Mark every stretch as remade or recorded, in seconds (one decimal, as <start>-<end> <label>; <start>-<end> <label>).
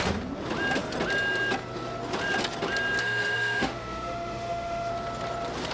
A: 0.0-3.0 recorded; 3.0-4.9 remade; 4.9-5.7 recorded